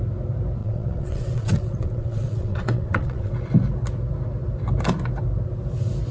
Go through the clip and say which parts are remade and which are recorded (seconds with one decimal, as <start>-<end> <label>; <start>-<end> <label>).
0.0-0.6 recorded; 0.6-3.3 remade; 3.3-6.1 recorded